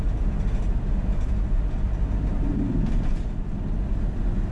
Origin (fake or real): fake